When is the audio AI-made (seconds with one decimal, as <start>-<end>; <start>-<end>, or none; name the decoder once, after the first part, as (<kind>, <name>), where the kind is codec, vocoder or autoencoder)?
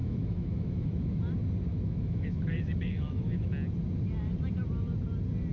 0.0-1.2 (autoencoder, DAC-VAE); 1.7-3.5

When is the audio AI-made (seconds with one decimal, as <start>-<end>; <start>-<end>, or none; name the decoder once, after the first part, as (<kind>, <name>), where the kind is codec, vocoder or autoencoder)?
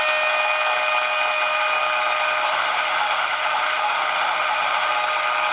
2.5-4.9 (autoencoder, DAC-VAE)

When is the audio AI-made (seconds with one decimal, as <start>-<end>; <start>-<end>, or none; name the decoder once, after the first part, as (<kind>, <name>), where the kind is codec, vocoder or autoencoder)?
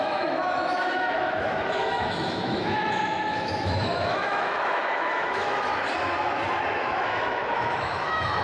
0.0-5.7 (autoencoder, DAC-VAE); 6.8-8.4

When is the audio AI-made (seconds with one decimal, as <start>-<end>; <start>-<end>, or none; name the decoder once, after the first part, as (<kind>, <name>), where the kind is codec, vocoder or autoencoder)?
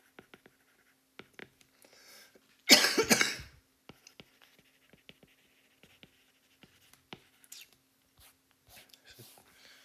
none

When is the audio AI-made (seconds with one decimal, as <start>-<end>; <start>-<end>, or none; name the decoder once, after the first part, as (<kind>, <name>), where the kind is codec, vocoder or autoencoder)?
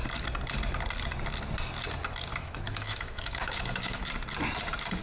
2.3-4.0 (autoencoder, DAC-VAE)